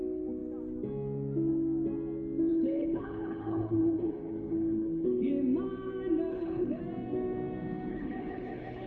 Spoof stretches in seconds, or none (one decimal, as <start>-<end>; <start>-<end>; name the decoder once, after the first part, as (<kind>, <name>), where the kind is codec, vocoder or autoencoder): 2.5-5.3 (codec, HILCodec); 6.3-6.8; 7.9-8.9